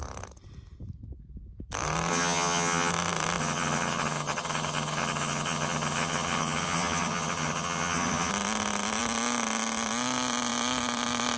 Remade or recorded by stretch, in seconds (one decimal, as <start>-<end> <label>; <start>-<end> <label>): 0.0-2.1 recorded; 2.1-2.9 remade; 2.9-3.4 recorded; 3.4-8.3 remade; 8.3-11.4 recorded